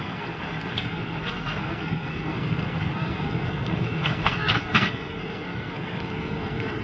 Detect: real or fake fake